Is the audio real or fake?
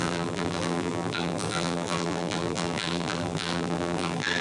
fake